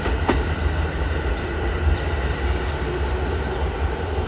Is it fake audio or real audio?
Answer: real